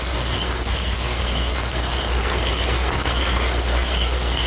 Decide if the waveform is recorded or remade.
remade